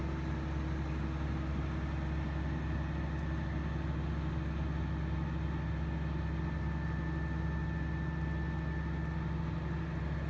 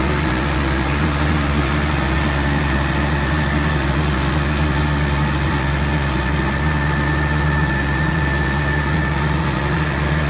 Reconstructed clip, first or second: second